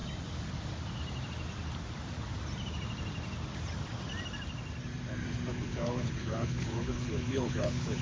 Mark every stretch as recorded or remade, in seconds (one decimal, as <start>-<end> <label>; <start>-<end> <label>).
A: 0.0-5.5 recorded; 5.5-8.0 remade